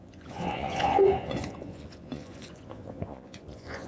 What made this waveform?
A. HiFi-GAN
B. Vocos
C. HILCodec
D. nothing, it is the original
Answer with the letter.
B